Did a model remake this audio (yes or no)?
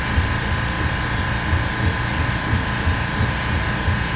no